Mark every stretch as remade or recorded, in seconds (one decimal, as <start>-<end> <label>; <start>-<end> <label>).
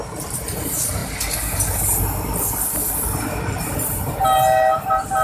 0.0-5.2 recorded